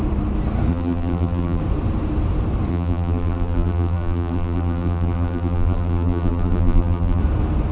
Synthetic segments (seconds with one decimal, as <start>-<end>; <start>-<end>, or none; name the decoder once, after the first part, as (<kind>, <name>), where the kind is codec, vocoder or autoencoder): 0.7-1.6 (vocoder, BigVGAN v2); 2.7-7.2